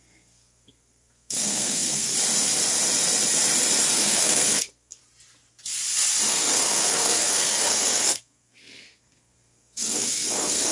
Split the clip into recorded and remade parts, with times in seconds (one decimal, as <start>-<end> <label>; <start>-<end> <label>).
0.0-2.1 remade; 2.1-3.9 recorded; 3.9-5.0 remade; 5.0-6.3 recorded; 6.3-10.7 remade

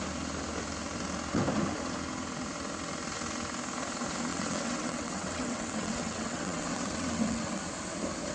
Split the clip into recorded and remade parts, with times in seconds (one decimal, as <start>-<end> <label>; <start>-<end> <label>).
0.0-4.3 recorded; 4.3-7.6 remade; 7.6-8.3 recorded

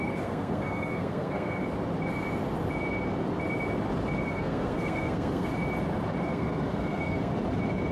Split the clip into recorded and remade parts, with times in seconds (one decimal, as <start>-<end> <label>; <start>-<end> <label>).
0.0-1.6 remade; 1.6-4.2 recorded; 4.2-5.5 remade; 5.5-6.2 recorded; 6.2-7.3 remade; 7.3-7.9 recorded

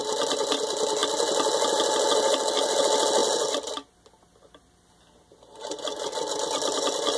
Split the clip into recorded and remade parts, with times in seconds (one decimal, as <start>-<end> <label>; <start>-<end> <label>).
0.0-7.2 recorded

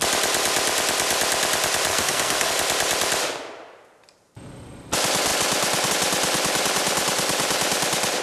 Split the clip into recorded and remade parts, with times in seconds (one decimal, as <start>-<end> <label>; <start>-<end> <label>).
0.0-1.9 recorded; 1.9-2.5 remade; 2.5-8.2 recorded

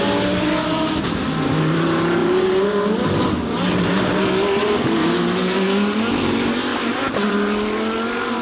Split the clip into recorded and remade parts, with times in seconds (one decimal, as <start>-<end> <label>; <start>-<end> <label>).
0.0-2.2 recorded; 2.2-3.6 remade; 3.6-6.7 recorded; 6.7-7.3 remade; 7.3-8.4 recorded